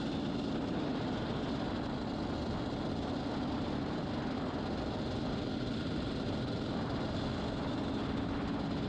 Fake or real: real